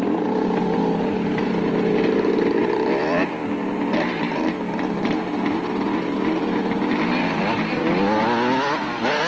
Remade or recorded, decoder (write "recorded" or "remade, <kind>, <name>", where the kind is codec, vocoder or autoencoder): recorded